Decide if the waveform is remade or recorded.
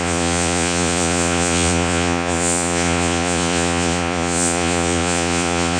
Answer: remade